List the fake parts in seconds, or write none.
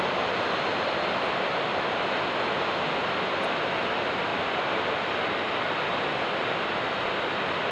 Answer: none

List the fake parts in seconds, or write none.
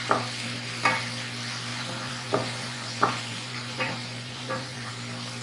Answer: 1.7-4.9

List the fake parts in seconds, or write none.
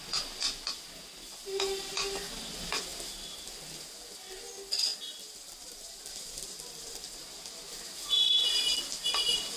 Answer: none